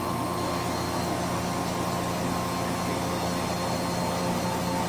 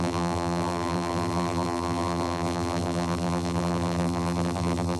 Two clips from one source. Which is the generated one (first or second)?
second